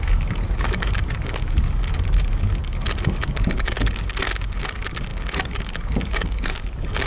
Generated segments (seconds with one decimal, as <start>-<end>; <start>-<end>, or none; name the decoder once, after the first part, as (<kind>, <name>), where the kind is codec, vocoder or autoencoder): 0.0-7.1 (codec, DAC)